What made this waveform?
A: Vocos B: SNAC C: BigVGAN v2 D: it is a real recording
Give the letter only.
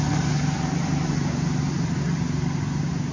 D